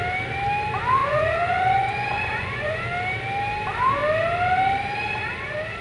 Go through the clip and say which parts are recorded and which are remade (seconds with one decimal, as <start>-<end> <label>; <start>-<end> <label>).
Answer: 0.0-1.0 recorded; 1.0-2.8 remade; 2.8-5.8 recorded